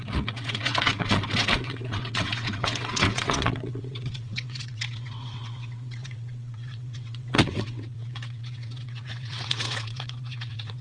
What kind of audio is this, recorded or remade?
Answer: remade